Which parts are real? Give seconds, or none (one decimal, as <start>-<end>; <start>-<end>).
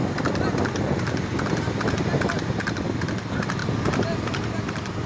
0.0-5.1